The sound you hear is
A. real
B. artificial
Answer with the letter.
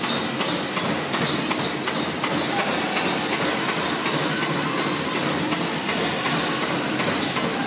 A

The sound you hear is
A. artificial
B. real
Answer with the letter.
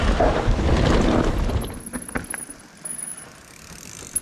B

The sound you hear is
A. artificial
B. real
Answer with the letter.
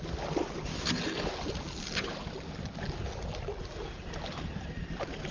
B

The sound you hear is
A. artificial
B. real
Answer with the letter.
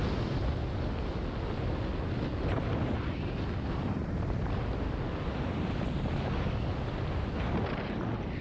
B